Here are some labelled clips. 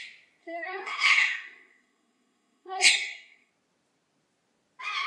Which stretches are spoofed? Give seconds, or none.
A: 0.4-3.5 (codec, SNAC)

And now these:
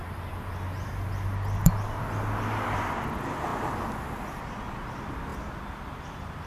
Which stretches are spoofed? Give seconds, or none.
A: none

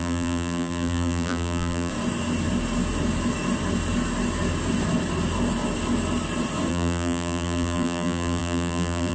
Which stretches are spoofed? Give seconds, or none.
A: 0.0-1.9 (vocoder, BigVGAN v2); 6.7-9.1

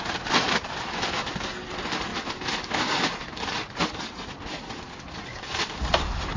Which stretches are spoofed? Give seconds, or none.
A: none

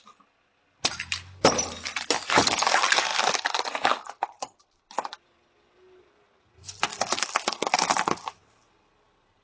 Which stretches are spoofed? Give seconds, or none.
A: 3.1-6.4 (vocoder, BigVGAN v2); 6.9-7.4

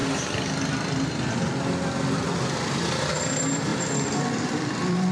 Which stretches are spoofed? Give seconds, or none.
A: 3.1-5.1 (vocoder, BigVGAN v2)

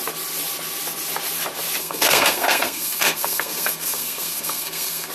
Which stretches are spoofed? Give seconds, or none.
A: 1.8-5.1 (codec, SNAC)

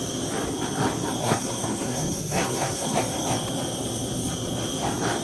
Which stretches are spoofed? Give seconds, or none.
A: 1.2-3.0 (codec, SNAC)